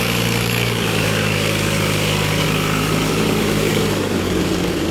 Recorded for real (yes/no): no